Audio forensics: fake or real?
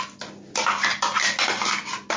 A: real